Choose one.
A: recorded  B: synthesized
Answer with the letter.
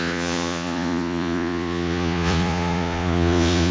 B